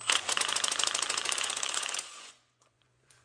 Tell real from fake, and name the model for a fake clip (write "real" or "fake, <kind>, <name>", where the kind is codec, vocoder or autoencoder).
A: fake, vocoder, Vocos